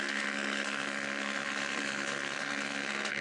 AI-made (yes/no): yes